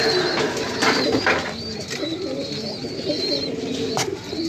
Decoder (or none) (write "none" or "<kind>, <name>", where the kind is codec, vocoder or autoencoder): none